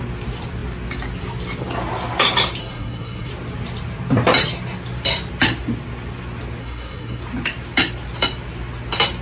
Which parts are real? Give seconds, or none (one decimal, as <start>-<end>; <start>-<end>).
0.0-2.6; 3.3-6.6; 7.2-9.2